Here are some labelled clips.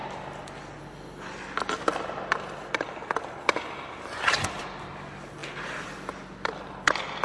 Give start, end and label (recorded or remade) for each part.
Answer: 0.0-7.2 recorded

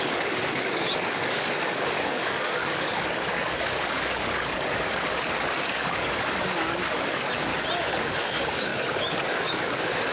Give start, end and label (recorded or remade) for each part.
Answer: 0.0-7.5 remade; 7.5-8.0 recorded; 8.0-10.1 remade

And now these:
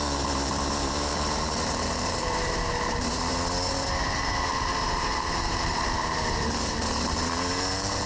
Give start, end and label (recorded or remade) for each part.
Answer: 0.0-3.3 remade; 3.3-4.5 recorded; 4.5-8.1 remade

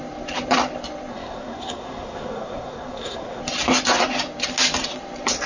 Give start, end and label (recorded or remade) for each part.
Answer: 0.0-1.1 recorded; 1.1-3.4 remade; 3.4-5.5 recorded

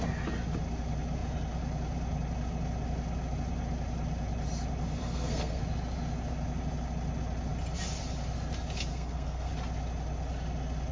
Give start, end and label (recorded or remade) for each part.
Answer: 0.0-5.0 recorded; 5.0-5.6 remade; 5.6-8.9 recorded; 8.9-9.5 remade; 9.5-10.9 recorded

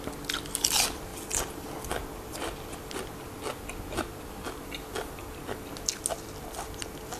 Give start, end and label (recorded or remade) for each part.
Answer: 0.0-7.2 recorded

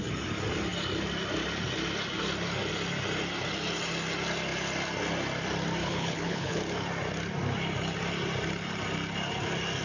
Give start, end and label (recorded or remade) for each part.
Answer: 0.0-5.8 recorded; 5.8-6.6 remade; 6.6-9.8 recorded

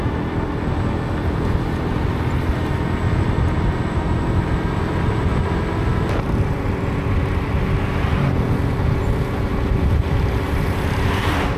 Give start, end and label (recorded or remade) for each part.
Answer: 0.0-11.6 recorded